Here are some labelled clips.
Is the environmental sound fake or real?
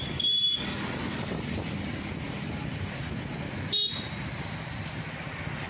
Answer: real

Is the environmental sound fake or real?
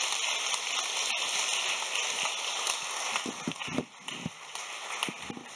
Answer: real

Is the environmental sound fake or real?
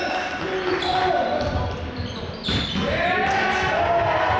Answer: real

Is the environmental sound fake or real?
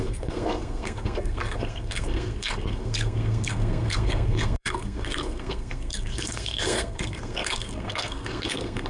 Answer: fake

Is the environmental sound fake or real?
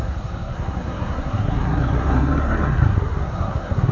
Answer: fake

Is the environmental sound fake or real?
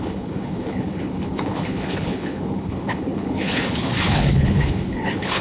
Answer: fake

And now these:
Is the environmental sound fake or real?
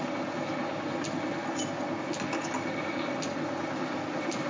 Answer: real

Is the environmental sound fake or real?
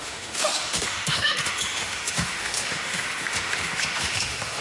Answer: fake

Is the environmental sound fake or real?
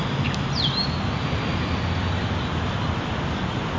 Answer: real